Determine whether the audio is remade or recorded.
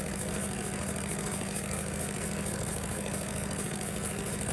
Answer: remade